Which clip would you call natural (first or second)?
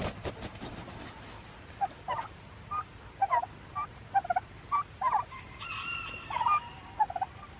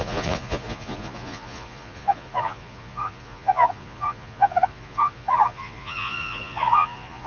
first